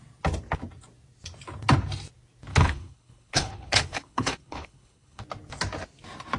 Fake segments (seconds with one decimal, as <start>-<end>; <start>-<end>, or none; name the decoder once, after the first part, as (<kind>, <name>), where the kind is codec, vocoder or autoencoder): 2.5-5.2 (codec, HILCodec)